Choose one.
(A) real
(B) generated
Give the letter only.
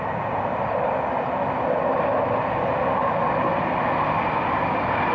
A